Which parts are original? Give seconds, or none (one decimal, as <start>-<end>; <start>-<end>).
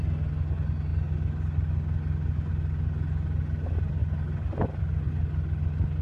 0.0-4.0; 5.1-6.0